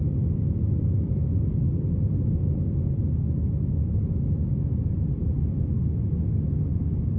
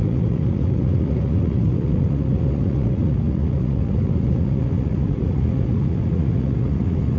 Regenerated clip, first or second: second